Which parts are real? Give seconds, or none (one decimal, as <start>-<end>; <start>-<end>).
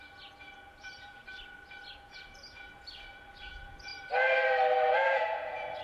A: 1.2-1.9; 3.9-4.9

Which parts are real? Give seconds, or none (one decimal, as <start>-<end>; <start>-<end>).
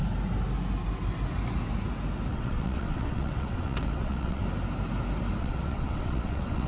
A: 0.0-2.3; 4.4-5.4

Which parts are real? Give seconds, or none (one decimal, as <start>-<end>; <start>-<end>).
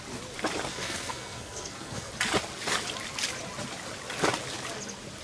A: 0.0-0.7; 2.1-5.2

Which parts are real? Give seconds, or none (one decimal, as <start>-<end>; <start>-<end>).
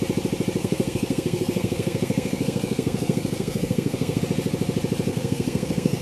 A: 0.0-0.6; 4.2-5.1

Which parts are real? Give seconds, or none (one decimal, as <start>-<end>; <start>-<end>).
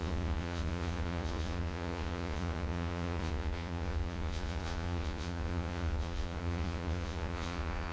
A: none